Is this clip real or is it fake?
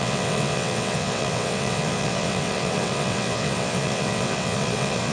fake